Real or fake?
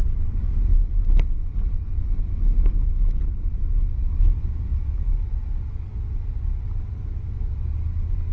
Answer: real